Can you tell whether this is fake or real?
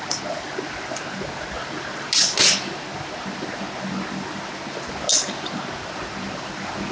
real